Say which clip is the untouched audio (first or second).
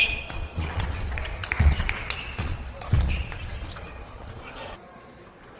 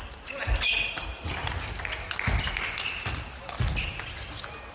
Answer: second